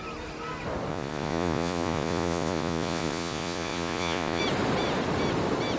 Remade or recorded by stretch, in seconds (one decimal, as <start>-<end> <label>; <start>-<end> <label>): 0.0-0.9 recorded; 0.9-4.4 remade; 4.4-5.8 recorded